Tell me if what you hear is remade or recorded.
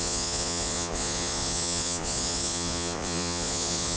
remade